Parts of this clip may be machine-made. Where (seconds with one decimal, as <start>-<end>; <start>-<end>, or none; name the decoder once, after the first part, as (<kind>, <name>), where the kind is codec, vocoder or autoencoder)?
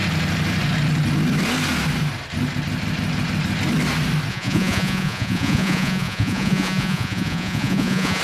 4.3-8.2 (vocoder, Vocos)